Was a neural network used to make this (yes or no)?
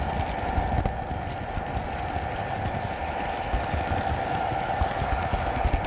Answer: no